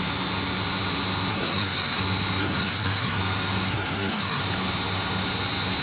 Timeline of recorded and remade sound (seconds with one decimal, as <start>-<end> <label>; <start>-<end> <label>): 0.0-1.3 recorded; 1.3-2.0 remade; 2.0-2.4 recorded; 2.4-3.2 remade; 3.2-3.7 recorded; 3.7-4.4 remade; 4.4-5.8 recorded